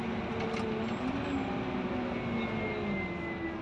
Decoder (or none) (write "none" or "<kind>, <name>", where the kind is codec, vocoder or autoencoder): none